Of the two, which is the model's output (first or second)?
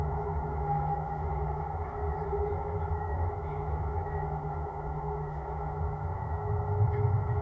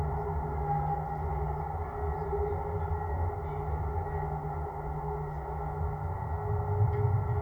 first